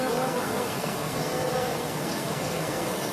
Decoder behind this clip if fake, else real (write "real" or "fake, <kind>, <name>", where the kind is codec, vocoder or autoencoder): fake, codec, SNAC